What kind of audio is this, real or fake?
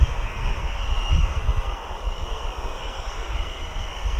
fake